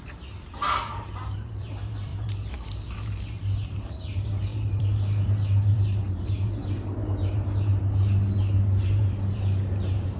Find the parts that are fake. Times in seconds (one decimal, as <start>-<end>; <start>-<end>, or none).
0.0-7.7; 8.8-10.2